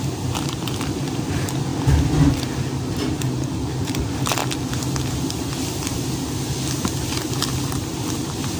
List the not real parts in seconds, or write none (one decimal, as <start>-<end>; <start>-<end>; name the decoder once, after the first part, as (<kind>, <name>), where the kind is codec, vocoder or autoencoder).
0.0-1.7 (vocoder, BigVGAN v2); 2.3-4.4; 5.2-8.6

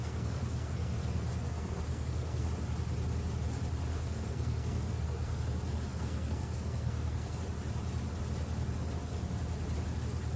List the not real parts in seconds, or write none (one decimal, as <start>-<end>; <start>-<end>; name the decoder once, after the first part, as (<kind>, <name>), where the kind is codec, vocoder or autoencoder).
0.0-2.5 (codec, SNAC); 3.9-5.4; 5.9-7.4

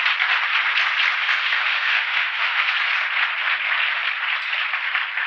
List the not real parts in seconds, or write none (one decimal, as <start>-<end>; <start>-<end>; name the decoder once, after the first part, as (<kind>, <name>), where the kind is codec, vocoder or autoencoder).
1.2-2.7 (autoencoder, DAC-VAE)

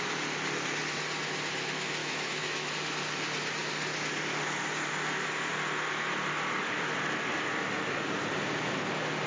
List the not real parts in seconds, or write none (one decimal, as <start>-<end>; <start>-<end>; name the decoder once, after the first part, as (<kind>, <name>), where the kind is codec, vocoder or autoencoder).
2.0-2.7 (autoencoder, DAC-VAE)

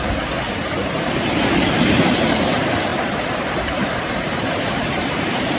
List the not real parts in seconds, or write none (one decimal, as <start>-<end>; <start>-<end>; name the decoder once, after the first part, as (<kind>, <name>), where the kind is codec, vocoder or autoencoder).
0.8-2.5 (vocoder, BigVGAN v2); 2.9-5.6

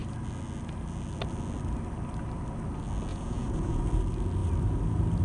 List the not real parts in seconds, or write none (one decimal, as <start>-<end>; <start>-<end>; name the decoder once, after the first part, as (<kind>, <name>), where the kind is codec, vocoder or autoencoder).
3.1-3.8 (vocoder, Vocos)

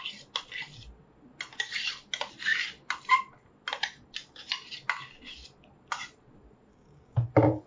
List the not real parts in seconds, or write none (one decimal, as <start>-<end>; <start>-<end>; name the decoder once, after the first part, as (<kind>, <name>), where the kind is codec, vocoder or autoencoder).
6.7-7.3 (codec, DAC)